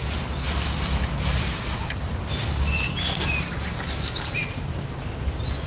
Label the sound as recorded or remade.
recorded